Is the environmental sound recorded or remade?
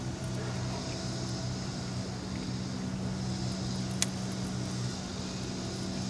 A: recorded